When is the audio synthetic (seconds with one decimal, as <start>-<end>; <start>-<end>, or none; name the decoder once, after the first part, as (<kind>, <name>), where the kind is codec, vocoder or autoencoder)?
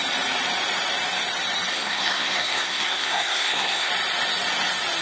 1.7-3.9 (codec, SNAC)